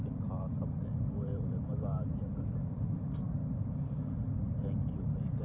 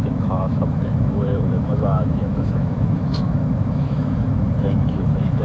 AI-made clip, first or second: second